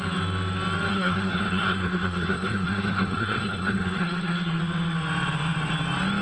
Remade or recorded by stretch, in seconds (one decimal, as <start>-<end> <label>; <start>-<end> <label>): 0.0-0.9 recorded; 0.9-4.6 remade; 4.6-6.2 recorded

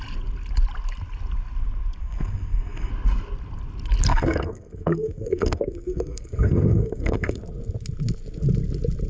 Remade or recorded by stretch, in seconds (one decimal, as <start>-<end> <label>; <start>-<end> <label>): 0.0-2.0 recorded; 2.0-2.9 remade; 2.9-4.1 recorded; 4.1-7.4 remade; 7.4-9.1 recorded

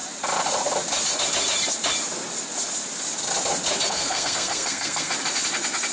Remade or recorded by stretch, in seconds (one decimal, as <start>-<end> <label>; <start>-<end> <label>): 0.0-3.9 recorded; 3.9-5.1 remade; 5.1-5.9 recorded

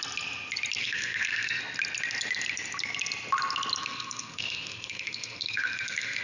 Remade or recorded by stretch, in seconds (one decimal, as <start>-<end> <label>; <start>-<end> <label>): 0.0-0.8 recorded; 0.8-1.6 remade; 1.6-3.8 recorded; 3.8-6.2 remade

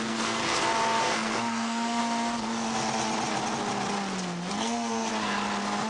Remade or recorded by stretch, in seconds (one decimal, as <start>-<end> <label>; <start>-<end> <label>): 0.0-0.4 remade; 0.4-1.0 recorded; 1.0-2.0 remade; 2.0-4.5 recorded; 4.5-5.1 remade; 5.1-5.9 recorded